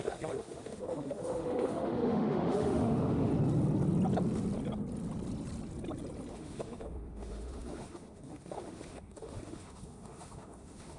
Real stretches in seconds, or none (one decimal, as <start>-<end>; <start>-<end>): 3.3-6.3

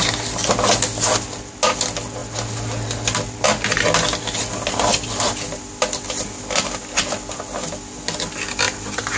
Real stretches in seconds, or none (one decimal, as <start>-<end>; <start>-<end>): 0.0-9.2

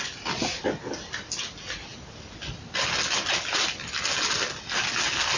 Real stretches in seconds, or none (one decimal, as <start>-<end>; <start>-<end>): 0.0-5.4

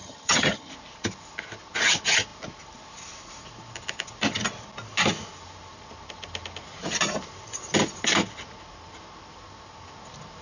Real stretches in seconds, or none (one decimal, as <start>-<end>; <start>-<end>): 0.7-10.4

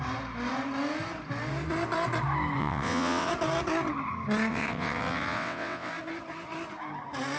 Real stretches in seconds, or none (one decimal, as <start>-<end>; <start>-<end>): 0.0-2.6; 3.3-4.5; 5.9-7.4

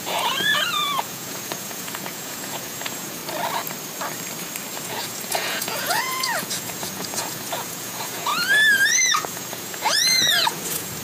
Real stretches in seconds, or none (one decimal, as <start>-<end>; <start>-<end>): 3.2-4.8; 8.3-8.9

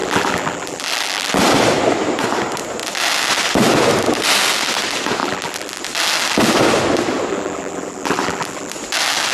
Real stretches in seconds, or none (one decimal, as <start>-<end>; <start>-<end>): 1.4-5.2; 5.8-7.3; 8.7-9.3